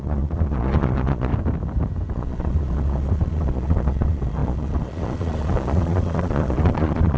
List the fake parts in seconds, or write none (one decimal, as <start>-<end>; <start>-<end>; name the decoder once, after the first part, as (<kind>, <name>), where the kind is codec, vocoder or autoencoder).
0.0-1.3 (vocoder, Vocos); 2.1-7.2